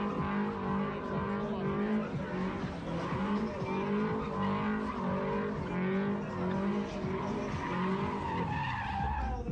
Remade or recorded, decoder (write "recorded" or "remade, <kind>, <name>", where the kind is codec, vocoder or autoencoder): recorded